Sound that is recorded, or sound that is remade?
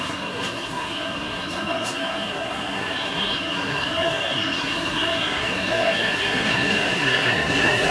remade